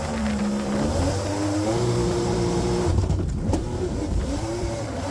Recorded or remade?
remade